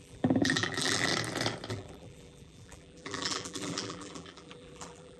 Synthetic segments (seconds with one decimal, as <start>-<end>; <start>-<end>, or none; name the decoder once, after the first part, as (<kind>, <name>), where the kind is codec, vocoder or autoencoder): 0.0-1.1 (vocoder, BigVGAN v2); 1.7-5.2